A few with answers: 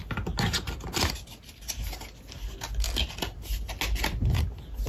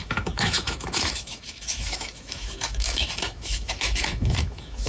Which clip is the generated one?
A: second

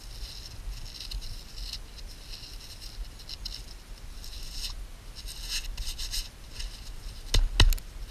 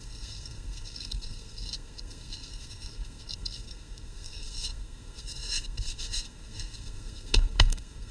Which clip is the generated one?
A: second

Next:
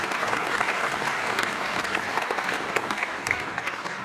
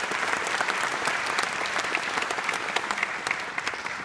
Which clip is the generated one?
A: first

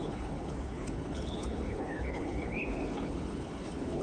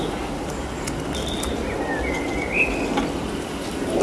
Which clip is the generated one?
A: first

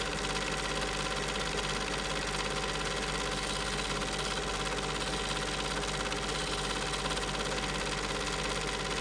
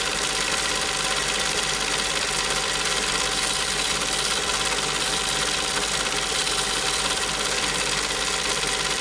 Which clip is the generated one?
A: second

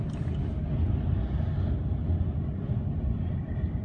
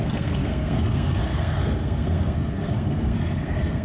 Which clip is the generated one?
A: second